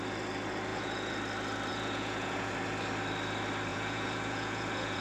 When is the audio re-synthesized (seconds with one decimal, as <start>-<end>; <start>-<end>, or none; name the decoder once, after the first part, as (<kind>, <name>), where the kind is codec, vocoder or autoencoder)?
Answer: 0.7-1.2 (vocoder, Vocos); 1.7-2.5; 3.7-5.0